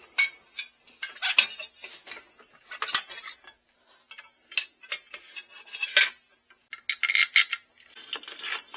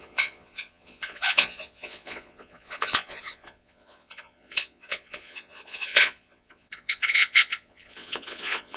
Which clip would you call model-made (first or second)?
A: second